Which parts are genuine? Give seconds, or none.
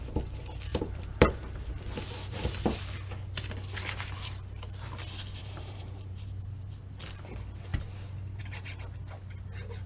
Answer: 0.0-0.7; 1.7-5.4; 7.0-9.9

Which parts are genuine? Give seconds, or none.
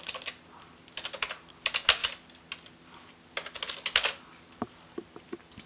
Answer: 0.0-5.7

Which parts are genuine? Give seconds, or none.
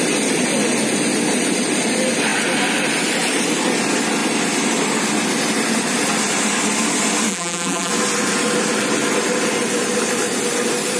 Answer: 0.0-7.3; 7.9-11.0